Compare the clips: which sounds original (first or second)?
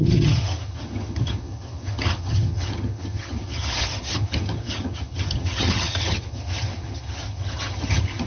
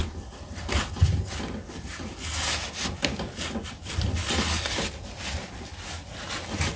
second